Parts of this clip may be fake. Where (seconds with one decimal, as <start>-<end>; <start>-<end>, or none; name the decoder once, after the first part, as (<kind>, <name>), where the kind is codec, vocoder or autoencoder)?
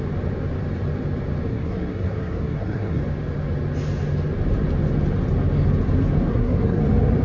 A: 1.5-3.0 (codec, SNAC); 6.3-6.8